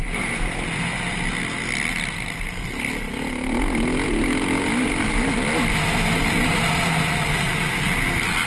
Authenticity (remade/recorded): recorded